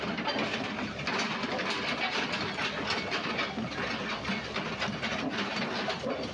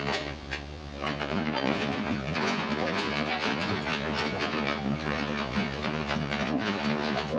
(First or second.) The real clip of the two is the first